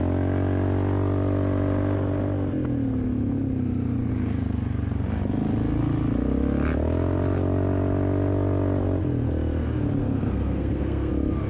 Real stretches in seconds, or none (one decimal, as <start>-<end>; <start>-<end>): 0.0-10.0; 11.1-11.5